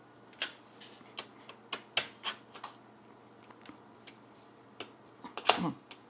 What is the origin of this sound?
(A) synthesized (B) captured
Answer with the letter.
B